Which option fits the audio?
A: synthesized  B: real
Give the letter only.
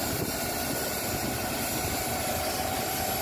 B